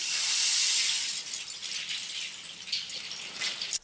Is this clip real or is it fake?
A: real